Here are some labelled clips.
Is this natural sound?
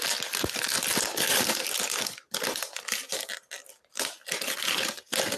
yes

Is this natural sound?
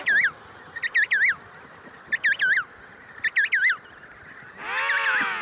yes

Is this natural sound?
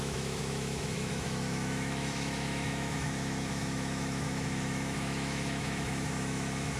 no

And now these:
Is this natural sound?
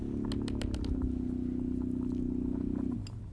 yes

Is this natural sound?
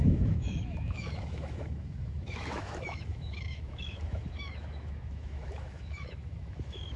no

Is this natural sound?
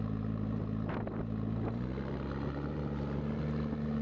yes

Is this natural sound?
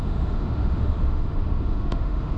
no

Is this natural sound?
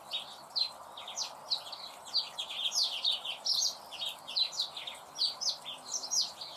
yes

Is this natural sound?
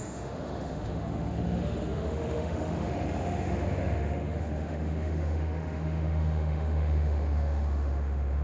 no